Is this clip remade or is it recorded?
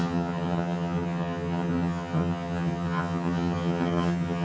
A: remade